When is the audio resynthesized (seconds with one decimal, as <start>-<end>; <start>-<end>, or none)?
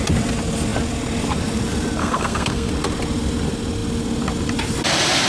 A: 2.0-2.7